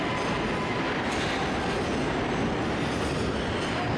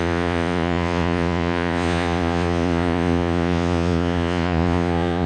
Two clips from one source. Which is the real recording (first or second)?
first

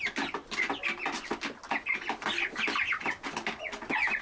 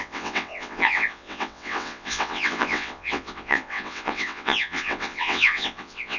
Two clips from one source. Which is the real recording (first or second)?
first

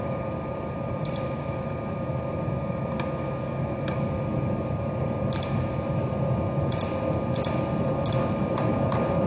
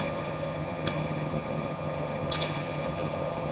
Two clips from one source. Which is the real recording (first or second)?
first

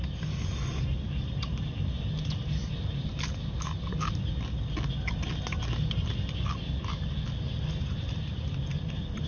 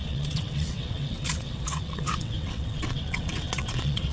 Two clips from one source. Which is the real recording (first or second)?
first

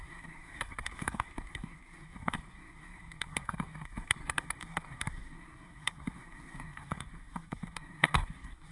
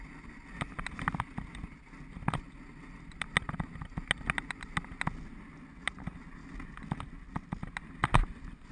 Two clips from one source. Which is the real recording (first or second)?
second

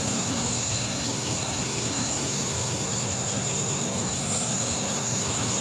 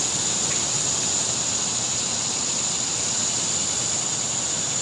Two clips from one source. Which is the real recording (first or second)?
second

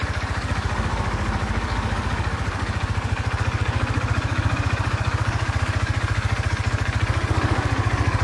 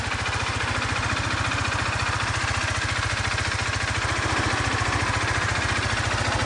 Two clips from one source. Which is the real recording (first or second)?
second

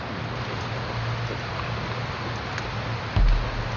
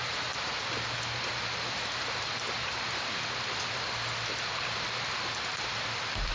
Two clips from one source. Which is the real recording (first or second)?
first